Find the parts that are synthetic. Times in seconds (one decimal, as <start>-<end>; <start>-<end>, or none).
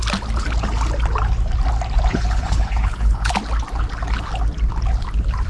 2.1-3.3